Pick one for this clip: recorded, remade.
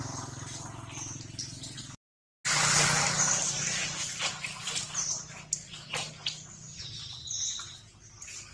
recorded